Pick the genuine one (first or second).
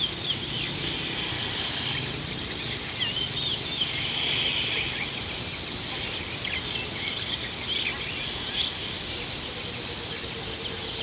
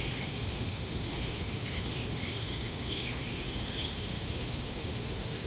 first